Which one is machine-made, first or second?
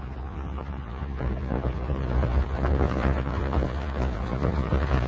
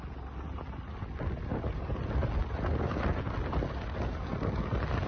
first